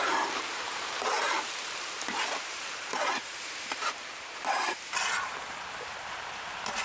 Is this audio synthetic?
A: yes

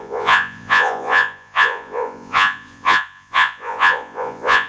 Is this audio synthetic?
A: yes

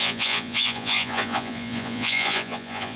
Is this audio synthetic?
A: yes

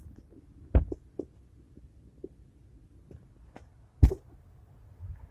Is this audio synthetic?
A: no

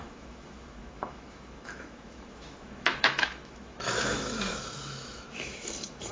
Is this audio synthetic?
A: yes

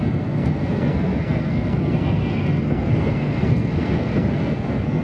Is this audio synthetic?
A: yes